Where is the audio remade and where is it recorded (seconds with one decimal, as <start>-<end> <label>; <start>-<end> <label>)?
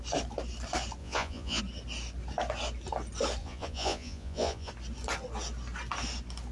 0.0-1.0 recorded; 1.0-1.6 remade; 1.6-3.4 recorded; 3.4-4.7 remade; 4.7-6.5 recorded